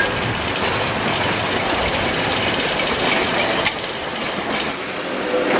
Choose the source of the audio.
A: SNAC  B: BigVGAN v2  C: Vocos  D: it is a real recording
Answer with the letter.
D